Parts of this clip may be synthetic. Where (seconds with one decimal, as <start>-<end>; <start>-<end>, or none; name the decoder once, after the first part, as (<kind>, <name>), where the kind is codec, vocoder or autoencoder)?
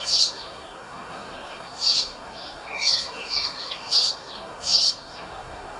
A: 0.0-5.8 (codec, SNAC)